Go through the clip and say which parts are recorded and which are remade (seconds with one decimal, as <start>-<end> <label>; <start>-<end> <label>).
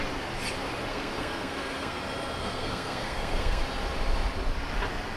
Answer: 0.0-0.9 recorded; 0.9-2.0 remade; 2.0-2.4 recorded; 2.4-3.6 remade; 3.6-5.2 recorded